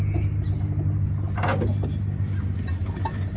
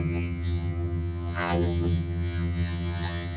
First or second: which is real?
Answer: first